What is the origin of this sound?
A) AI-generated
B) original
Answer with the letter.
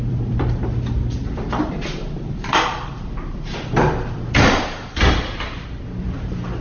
A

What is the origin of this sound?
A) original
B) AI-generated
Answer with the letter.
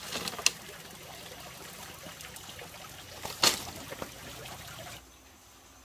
A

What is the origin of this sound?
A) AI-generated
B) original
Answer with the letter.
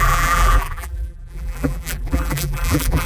A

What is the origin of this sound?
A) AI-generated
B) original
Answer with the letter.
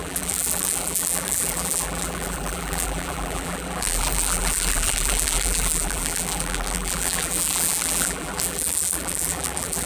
A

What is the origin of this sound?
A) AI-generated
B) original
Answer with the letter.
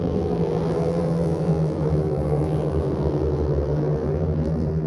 A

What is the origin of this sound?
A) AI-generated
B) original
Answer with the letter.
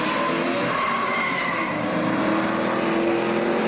B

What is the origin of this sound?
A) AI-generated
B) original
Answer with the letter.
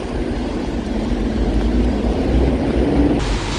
B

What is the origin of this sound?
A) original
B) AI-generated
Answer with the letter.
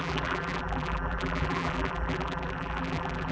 B